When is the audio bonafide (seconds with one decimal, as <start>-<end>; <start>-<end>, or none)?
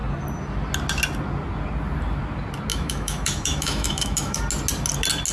0.0-2.7; 4.4-5.3